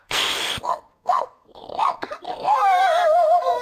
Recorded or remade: remade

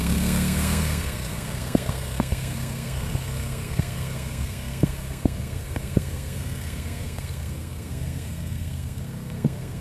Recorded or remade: remade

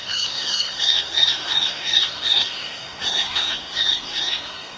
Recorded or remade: remade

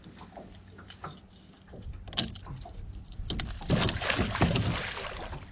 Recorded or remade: recorded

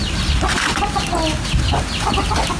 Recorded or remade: recorded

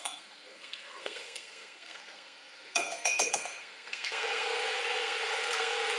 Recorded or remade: remade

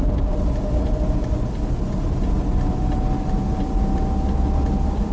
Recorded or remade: recorded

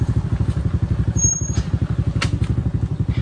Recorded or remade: recorded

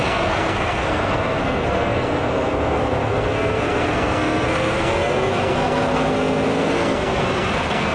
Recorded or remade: remade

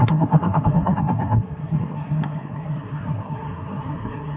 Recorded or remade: remade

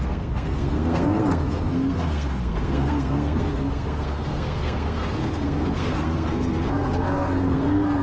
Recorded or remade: remade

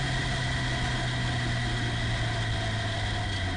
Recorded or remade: recorded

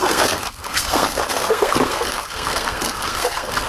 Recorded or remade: remade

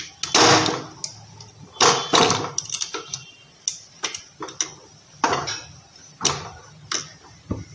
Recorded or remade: recorded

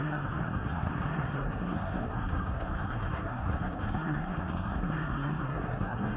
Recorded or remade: remade